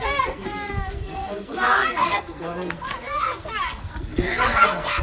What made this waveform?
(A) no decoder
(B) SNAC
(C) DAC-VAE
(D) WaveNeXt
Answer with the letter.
B